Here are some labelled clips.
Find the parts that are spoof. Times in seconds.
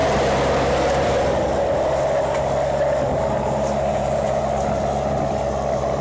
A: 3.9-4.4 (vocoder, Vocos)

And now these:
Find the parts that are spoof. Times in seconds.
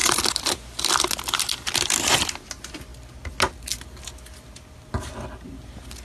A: none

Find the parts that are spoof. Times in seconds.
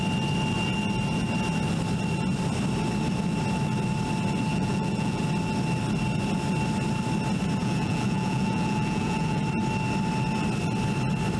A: 4.5-5.2 (vocoder, Vocos); 7.6-9.4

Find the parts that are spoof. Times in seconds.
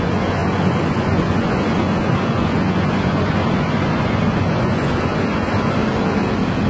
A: 0.0-5.8 (vocoder, Vocos)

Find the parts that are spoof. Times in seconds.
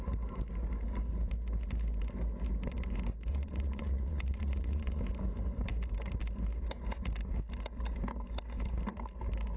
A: 3.3-5.0 (vocoder, Vocos)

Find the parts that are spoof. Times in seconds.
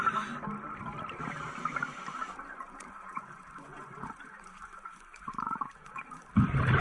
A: 2.2-6.3 (vocoder, Vocos)